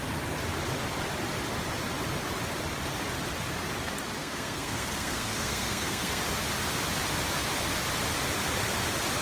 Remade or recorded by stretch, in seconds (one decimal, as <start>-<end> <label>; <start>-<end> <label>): 0.0-4.2 recorded; 4.2-6.2 remade; 6.2-9.2 recorded